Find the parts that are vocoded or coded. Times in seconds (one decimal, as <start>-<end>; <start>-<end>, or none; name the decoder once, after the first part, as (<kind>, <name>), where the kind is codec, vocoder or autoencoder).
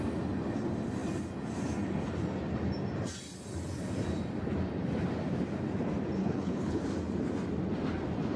6.2-6.8 (codec, HILCodec)